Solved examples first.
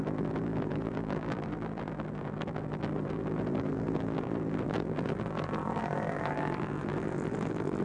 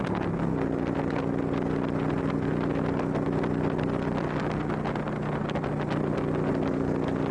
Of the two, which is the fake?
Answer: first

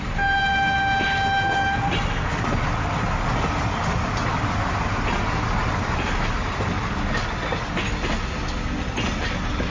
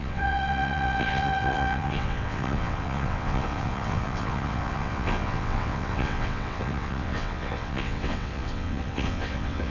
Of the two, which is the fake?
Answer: second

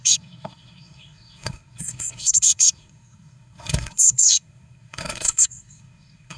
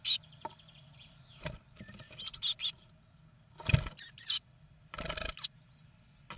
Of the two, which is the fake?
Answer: first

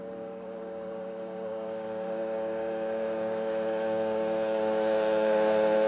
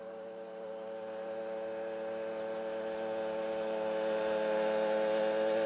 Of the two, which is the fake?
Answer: first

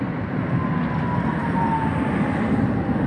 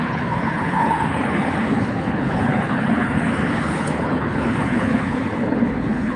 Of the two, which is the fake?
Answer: second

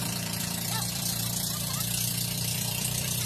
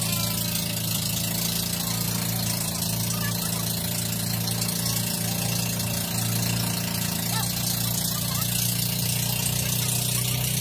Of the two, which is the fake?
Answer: first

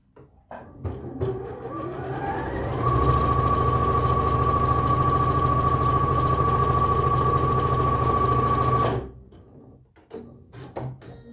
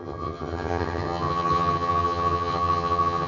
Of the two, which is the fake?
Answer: second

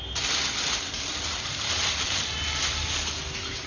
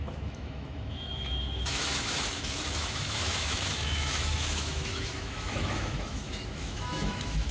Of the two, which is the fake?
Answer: second